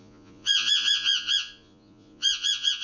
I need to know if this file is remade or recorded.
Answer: remade